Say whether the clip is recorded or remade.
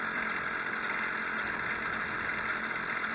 recorded